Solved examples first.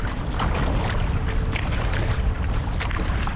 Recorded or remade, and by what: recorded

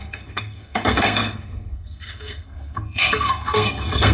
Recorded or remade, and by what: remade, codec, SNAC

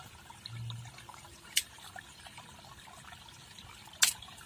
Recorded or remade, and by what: recorded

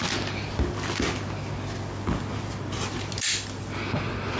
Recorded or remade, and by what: recorded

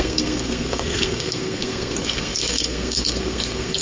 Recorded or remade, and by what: remade, codec, SNAC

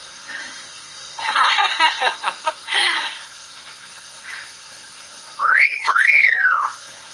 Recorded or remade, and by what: remade, codec, SNAC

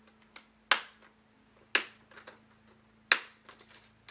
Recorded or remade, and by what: recorded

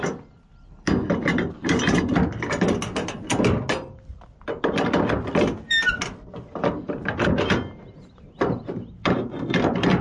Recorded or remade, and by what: recorded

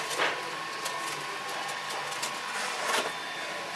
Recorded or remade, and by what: recorded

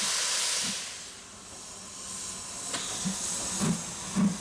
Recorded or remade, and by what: recorded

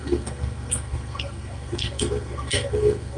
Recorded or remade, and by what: remade, codec, SNAC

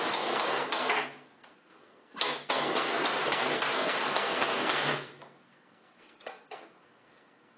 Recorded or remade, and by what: remade, codec, SNAC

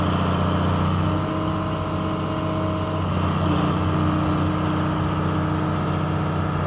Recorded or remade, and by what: recorded